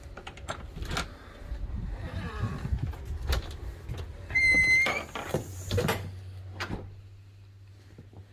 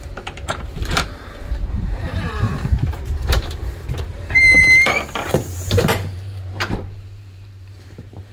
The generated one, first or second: second